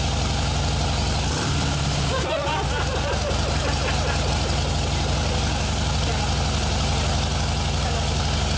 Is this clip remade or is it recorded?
recorded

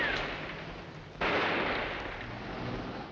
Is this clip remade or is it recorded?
recorded